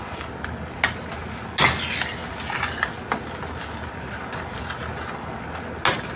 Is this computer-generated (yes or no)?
no